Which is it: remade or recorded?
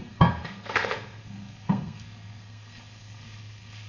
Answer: remade